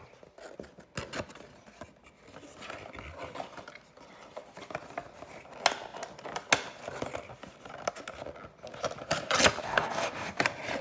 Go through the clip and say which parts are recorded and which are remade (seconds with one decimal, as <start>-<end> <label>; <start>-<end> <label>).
0.0-9.6 recorded; 9.6-10.4 remade; 10.4-10.8 recorded

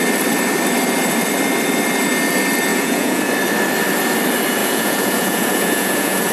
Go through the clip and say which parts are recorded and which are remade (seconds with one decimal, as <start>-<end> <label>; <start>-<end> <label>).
0.0-2.7 recorded; 2.7-3.3 remade; 3.3-4.6 recorded; 4.6-6.3 remade

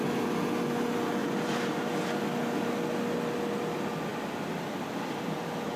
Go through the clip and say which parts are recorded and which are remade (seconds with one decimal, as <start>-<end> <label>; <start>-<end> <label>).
0.0-1.2 recorded; 1.2-2.7 remade; 2.7-4.1 recorded; 4.1-5.8 remade